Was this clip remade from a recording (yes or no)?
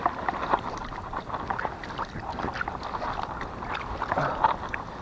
no